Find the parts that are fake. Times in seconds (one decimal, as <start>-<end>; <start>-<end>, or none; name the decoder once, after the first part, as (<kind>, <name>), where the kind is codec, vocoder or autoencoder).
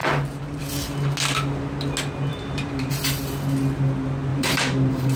0.0-0.6 (vocoder, BigVGAN v2); 2.3-2.9; 4.3-5.2